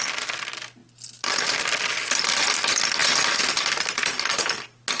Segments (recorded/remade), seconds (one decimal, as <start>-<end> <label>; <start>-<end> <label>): 0.0-5.0 recorded